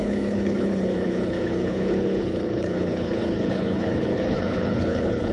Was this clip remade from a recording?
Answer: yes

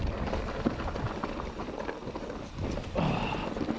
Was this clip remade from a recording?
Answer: no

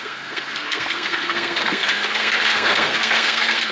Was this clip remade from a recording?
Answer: yes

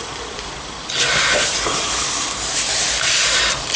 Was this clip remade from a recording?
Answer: no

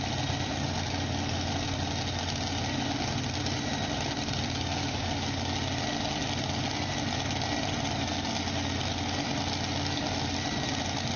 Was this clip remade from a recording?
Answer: no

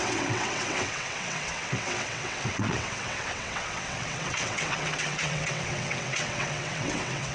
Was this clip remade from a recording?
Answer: yes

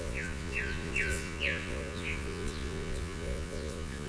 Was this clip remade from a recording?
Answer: yes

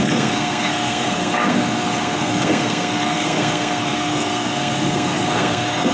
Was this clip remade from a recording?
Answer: yes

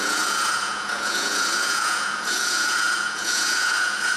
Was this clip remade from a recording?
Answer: yes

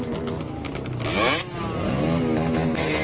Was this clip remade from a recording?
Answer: no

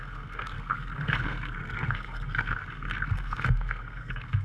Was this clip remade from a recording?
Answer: yes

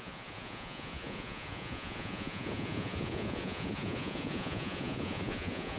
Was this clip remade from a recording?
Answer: yes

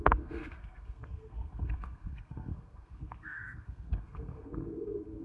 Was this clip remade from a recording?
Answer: yes